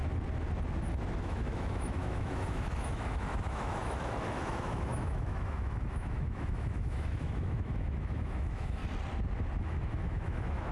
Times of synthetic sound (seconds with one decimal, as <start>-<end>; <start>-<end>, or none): 1.2-8.8; 9.6-10.7